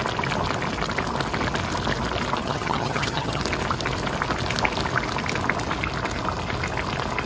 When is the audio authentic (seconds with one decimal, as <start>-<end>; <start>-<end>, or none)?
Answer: 0.0-2.4; 3.4-7.3